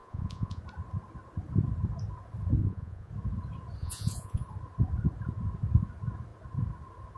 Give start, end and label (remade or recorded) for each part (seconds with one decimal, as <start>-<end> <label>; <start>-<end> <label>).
0.0-0.6 remade; 0.6-2.6 recorded; 2.6-3.1 remade; 3.1-3.8 recorded; 3.8-4.4 remade; 4.4-7.2 recorded